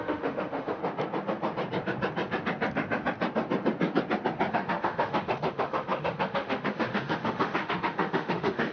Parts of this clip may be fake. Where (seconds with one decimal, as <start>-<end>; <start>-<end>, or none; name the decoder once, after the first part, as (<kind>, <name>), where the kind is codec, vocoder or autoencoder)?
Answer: 0.0-0.8 (autoencoder, DAC-VAE); 4.5-8.7